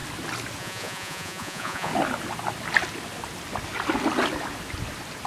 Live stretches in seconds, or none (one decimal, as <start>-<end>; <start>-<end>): 0.0-0.6; 1.9-5.3